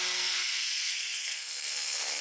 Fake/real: fake